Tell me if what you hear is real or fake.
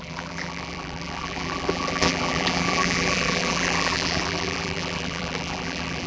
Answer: fake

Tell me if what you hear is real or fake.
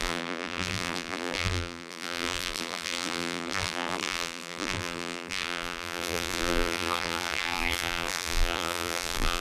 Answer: fake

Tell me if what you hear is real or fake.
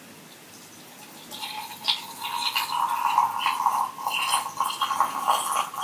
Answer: real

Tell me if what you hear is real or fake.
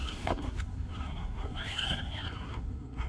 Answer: fake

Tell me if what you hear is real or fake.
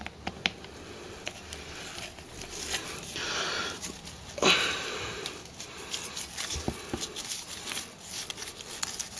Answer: real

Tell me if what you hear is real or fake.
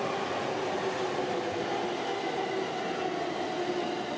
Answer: real